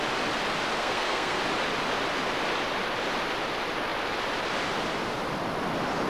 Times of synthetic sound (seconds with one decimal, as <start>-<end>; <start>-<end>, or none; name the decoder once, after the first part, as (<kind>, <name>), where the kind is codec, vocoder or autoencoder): 0.8-1.4 (codec, SNAC)